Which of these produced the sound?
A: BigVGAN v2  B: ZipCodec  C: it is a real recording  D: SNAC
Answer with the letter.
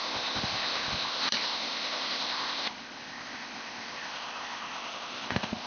B